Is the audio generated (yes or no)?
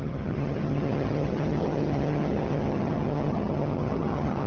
yes